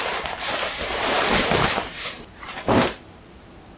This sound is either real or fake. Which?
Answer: fake